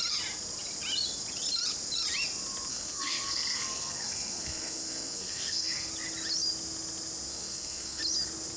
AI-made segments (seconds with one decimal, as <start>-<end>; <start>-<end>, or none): 2.7-5.9; 7.3-8.0